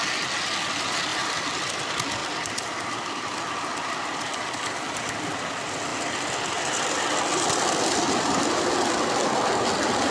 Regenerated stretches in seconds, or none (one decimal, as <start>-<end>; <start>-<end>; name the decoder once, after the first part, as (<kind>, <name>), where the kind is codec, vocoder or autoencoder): 1.1-1.8 (vocoder, BigVGAN v2); 2.2-3.5